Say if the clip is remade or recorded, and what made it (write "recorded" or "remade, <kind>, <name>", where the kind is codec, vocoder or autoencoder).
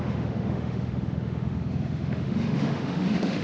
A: remade, autoencoder, DAC-VAE